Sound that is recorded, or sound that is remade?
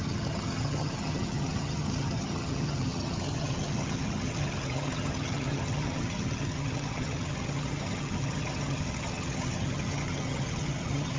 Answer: remade